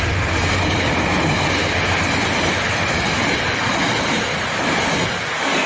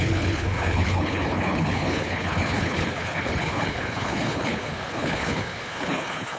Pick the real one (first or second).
first